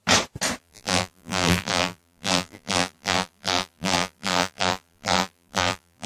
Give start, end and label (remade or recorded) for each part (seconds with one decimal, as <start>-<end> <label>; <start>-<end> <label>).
0.0-0.6 recorded; 0.6-6.1 remade